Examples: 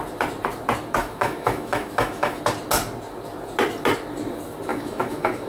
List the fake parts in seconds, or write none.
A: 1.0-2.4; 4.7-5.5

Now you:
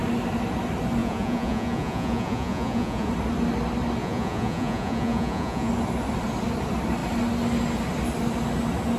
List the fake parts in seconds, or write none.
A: 1.0-3.1; 4.0-5.7

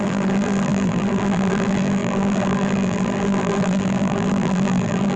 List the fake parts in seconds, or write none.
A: 0.0-5.2

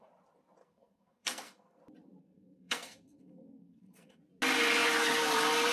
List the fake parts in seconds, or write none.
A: 0.6-1.8; 2.2-4.2